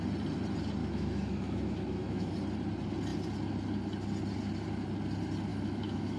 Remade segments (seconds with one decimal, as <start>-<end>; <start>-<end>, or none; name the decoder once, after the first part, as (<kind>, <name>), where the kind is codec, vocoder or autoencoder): 0.8-2.3 (autoencoder, DAC-VAE); 5.5-6.2